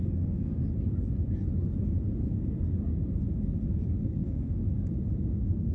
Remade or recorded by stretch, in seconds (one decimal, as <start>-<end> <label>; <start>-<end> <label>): 0.0-0.6 remade; 0.6-4.0 recorded; 4.0-4.6 remade; 4.6-5.3 recorded; 5.3-5.7 remade